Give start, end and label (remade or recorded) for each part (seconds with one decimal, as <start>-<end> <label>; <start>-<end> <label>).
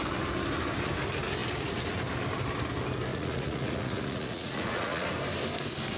0.0-3.1 recorded; 3.1-5.1 remade; 5.1-6.0 recorded